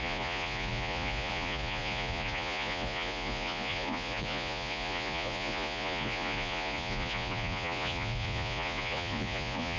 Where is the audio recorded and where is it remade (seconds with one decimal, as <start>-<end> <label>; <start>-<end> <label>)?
0.0-9.8 remade